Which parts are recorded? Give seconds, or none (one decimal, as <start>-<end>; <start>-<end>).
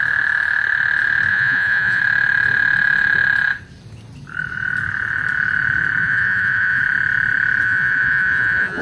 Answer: 0.0-1.3; 2.0-6.0; 6.8-7.6